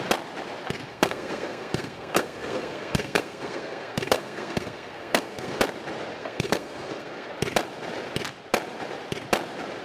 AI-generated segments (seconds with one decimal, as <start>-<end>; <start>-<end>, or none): 0.9-5.6; 6.2-7.3

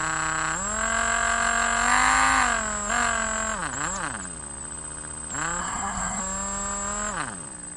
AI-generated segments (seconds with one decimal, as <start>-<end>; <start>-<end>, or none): 5.6-6.2

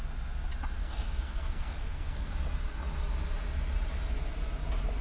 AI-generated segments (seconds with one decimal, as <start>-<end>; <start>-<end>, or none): 0.8-2.3